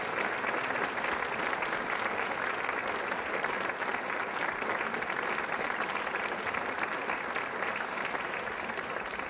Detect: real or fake real